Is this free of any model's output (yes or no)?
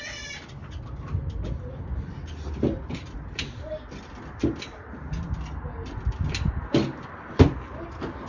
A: yes